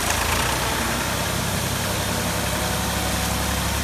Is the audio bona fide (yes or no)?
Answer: yes